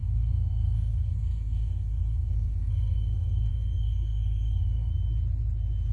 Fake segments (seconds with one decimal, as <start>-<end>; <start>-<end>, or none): 0.0-4.9